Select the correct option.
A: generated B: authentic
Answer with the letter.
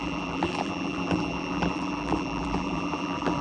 A